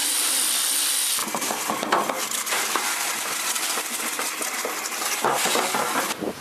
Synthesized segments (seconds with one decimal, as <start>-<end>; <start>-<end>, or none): 0.0-0.7; 1.2-4.4